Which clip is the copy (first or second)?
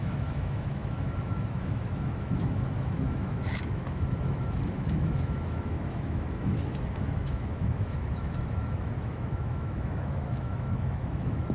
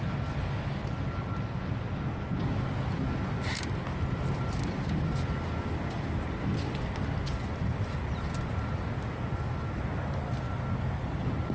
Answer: first